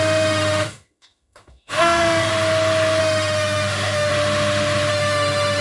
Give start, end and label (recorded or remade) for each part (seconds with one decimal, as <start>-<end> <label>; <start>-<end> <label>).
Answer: 0.0-2.3 remade; 2.3-3.0 recorded; 3.0-4.1 remade; 4.1-4.9 recorded; 4.9-5.6 remade